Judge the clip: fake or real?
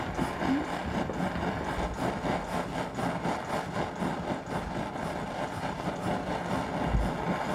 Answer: real